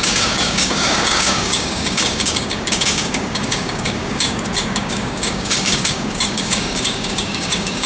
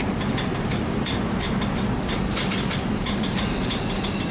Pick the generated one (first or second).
first